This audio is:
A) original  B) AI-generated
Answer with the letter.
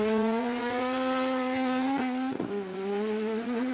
B